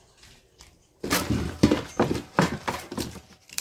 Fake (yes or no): yes